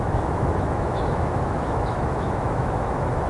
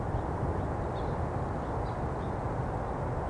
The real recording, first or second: second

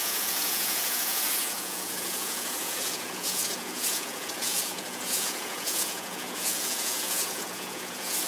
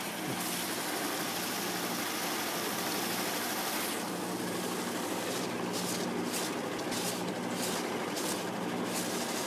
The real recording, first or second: second